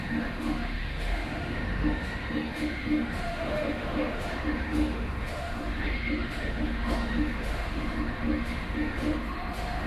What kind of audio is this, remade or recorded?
remade